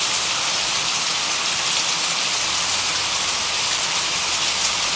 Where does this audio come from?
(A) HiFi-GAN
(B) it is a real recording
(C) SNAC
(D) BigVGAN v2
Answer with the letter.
B